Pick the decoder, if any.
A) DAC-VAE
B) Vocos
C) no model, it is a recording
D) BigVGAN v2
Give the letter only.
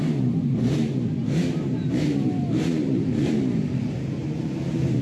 D